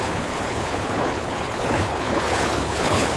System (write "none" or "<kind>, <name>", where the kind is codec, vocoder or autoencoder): codec, HILCodec